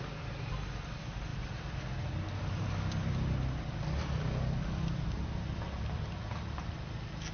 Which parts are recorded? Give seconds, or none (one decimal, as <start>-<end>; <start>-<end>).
0.0-7.3